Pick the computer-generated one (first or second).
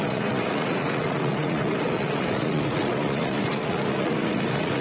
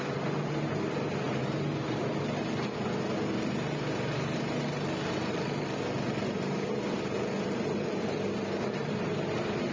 first